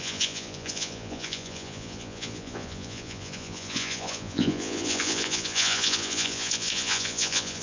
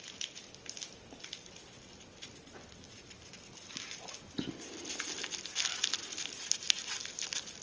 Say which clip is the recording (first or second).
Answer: second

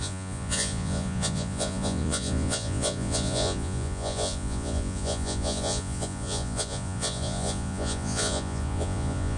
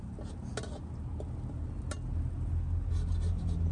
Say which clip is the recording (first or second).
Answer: second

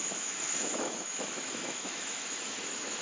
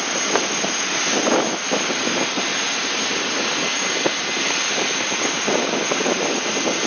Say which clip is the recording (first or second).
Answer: second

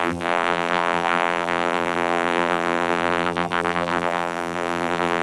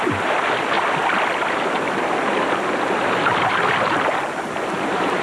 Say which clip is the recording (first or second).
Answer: second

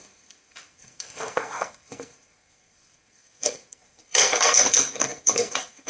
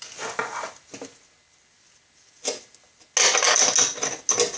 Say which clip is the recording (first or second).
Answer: second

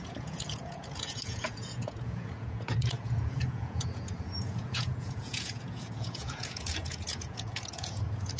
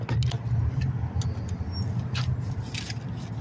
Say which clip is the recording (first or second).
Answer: second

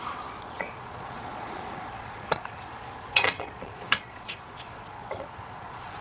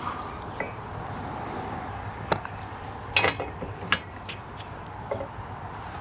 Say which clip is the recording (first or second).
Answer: second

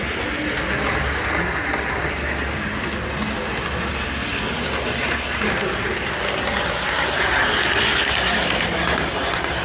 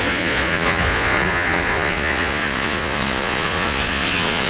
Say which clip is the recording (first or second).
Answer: first